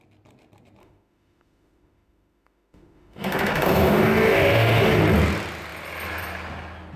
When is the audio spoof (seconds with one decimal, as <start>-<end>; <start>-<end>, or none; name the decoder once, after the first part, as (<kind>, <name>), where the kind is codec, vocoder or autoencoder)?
0.8-5.0 (autoencoder, DAC-VAE)

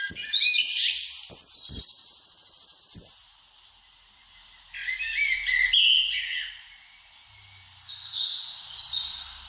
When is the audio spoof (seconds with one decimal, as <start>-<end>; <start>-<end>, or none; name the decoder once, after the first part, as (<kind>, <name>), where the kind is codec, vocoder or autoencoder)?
2.0-2.8 (vocoder, Vocos)

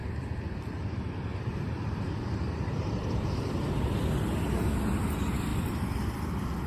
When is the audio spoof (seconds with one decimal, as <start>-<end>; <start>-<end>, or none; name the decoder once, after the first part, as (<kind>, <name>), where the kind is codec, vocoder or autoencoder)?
0.0-0.8 (vocoder, BigVGAN v2); 1.3-2.5; 5.5-6.2

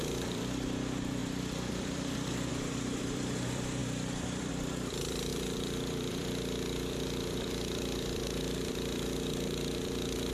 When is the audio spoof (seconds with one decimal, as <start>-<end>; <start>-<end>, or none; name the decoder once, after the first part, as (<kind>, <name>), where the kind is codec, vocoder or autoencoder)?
0.0-10.3 (vocoder, BigVGAN v2)

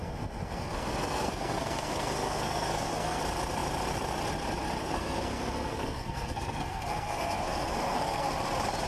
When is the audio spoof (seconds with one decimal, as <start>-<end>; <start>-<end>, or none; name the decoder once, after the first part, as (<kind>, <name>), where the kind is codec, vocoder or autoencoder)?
0.0-3.2 (codec, SNAC); 4.8-8.3